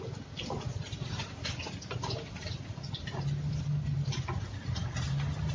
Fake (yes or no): no